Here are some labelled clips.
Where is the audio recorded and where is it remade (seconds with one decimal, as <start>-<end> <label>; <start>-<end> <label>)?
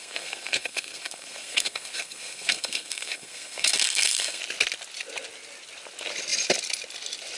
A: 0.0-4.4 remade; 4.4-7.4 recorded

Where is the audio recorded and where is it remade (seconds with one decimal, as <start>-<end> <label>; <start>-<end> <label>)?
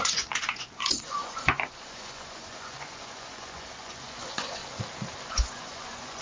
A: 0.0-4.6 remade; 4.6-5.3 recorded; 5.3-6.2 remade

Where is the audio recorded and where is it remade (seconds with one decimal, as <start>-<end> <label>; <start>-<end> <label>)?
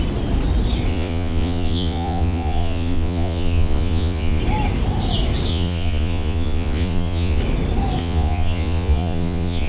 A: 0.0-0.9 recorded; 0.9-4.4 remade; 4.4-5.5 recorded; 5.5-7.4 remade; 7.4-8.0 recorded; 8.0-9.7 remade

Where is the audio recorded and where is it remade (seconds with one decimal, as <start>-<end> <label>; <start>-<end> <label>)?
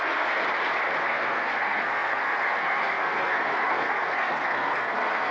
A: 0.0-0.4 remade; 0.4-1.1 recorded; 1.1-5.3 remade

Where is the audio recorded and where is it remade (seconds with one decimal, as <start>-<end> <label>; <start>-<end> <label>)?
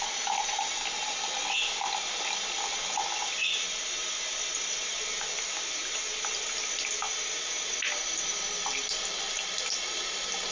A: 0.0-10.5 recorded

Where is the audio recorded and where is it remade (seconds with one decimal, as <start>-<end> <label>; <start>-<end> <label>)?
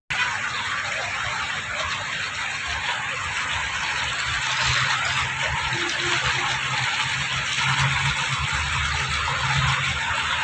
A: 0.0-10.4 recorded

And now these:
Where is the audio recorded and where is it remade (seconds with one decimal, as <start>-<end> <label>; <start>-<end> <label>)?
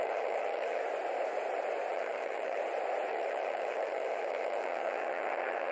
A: 0.0-0.8 remade; 0.8-1.9 recorded; 1.9-2.6 remade; 2.6-3.1 recorded; 3.1-5.7 remade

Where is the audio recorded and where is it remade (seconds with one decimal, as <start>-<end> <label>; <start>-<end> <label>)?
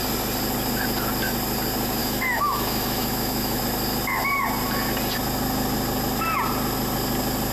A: 0.0-2.0 recorded; 2.0-3.6 remade; 3.6-7.5 recorded